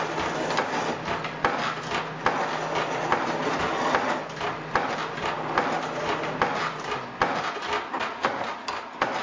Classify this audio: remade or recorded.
recorded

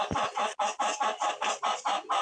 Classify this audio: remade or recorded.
recorded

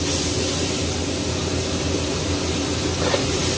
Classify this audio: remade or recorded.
recorded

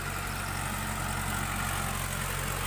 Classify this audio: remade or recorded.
recorded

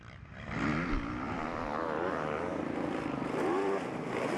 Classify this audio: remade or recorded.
recorded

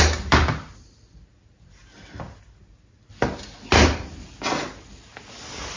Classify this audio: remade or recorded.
recorded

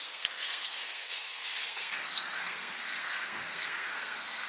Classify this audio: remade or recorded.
remade